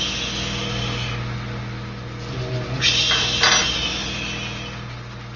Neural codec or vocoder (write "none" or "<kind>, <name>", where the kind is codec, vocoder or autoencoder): none